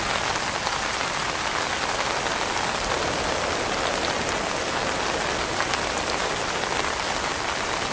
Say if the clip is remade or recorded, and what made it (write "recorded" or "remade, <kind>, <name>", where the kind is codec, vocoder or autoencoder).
recorded